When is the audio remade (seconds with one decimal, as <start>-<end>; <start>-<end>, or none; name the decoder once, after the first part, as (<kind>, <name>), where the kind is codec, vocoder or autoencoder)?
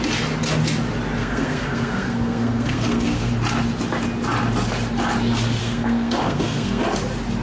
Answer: 1.2-3.3 (codec, SNAC); 5.6-6.8